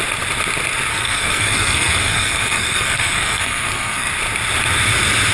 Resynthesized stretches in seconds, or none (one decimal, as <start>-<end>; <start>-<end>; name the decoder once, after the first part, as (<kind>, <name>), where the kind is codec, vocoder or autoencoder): 0.9-4.1 (codec, SNAC)